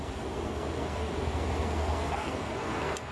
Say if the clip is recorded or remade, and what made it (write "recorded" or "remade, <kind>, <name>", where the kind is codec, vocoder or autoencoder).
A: remade, codec, SNAC